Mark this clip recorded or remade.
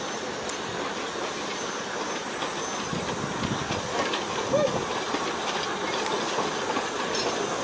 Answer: recorded